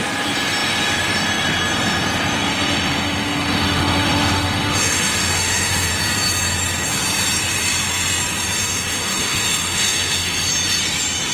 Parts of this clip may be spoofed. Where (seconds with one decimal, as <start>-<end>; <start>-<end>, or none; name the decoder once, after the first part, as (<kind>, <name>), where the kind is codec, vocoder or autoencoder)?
2.5-5.9 (autoencoder, DAC-VAE); 8.6-10.5